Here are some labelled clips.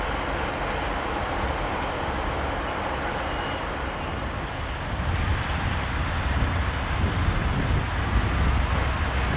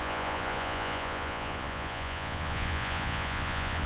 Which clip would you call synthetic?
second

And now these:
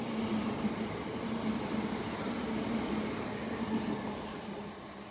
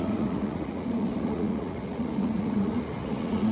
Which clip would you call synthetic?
second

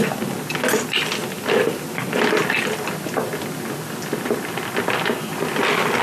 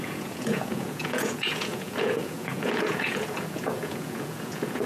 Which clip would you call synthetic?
second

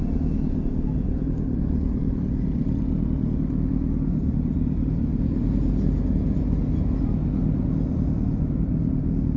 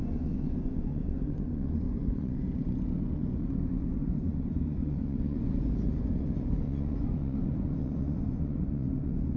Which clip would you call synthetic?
second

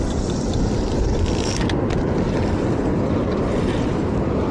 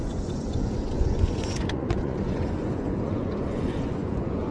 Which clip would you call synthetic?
second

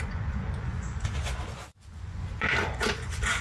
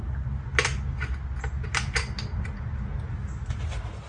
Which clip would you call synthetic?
first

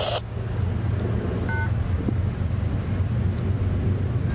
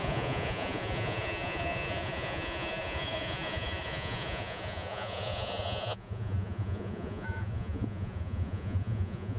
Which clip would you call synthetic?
second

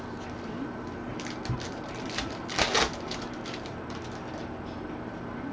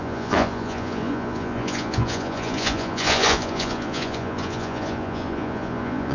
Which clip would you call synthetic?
second